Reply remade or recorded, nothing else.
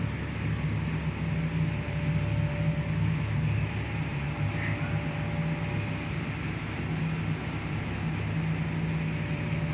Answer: recorded